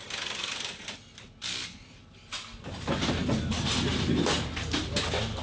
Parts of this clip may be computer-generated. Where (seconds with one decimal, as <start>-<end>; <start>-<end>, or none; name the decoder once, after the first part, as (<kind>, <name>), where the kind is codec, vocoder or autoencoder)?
none